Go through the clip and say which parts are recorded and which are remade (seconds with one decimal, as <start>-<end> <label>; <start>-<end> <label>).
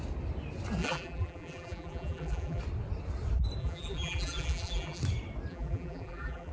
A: 0.0-0.8 recorded; 0.8-2.6 remade; 2.6-3.6 recorded; 3.6-5.0 remade; 5.0-5.5 recorded; 5.5-6.5 remade